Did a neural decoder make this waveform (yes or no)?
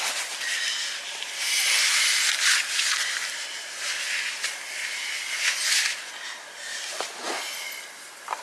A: no